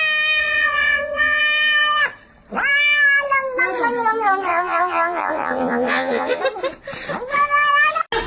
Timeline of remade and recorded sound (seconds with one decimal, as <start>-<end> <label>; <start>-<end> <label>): 0.0-0.4 recorded; 0.4-1.4 remade; 1.4-4.5 recorded; 4.5-6.4 remade; 6.4-8.3 recorded

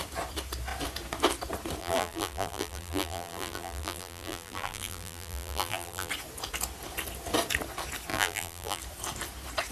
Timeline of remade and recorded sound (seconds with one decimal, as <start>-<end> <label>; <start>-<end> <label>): 0.0-1.8 recorded; 1.8-6.1 remade; 6.1-8.1 recorded; 8.1-8.8 remade; 8.8-9.7 recorded

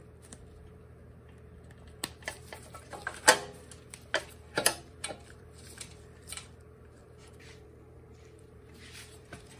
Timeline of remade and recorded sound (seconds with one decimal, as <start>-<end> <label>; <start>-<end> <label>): 0.0-4.2 recorded; 4.2-9.6 remade

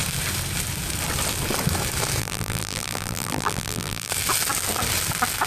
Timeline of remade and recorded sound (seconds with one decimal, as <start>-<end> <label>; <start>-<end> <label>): 0.0-2.2 recorded; 2.2-4.1 remade; 4.1-5.5 recorded

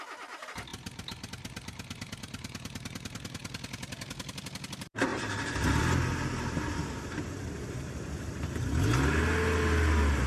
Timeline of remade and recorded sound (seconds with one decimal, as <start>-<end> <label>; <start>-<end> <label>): 0.0-10.3 recorded

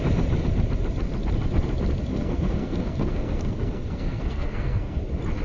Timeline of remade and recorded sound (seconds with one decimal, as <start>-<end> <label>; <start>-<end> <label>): 0.0-2.1 recorded; 2.1-5.0 remade; 5.0-5.4 recorded

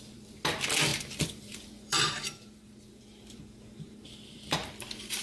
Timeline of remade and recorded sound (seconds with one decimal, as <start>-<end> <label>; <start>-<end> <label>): 0.0-0.9 recorded; 0.9-3.4 remade; 3.4-4.6 recorded; 4.6-5.2 remade